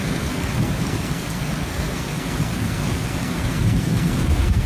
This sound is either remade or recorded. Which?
remade